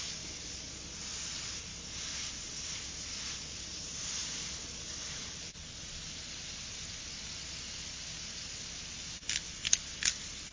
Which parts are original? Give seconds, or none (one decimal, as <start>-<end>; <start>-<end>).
1.7-2.4; 5.6-10.5